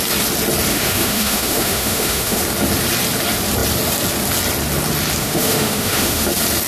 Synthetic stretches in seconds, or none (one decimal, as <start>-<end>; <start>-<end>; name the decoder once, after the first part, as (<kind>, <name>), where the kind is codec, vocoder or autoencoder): 0.7-2.4 (autoencoder, DAC-VAE); 5.2-6.3